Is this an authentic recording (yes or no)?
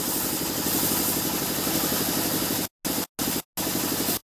yes